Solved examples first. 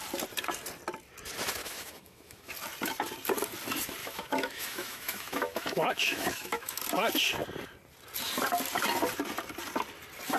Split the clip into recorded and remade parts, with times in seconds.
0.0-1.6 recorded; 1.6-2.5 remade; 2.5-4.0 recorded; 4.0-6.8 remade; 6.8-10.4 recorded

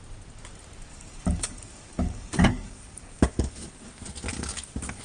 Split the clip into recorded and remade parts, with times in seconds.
0.0-0.9 recorded; 0.9-3.9 remade; 3.9-4.3 recorded; 4.3-5.0 remade

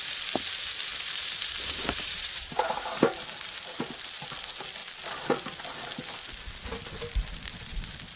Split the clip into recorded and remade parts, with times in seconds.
0.0-0.9 recorded; 0.9-3.0 remade; 3.0-8.2 recorded

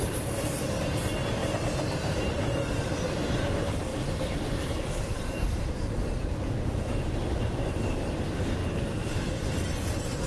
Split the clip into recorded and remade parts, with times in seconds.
0.0-3.9 recorded; 3.9-5.7 remade; 5.7-8.6 recorded; 8.6-9.3 remade; 9.3-10.3 recorded